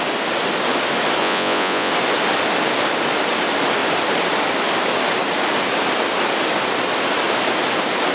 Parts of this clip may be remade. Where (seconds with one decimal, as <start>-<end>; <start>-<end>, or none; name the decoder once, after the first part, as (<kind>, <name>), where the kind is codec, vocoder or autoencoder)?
1.2-1.9 (vocoder, Vocos)